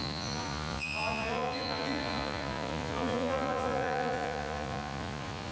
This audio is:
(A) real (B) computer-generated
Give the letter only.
B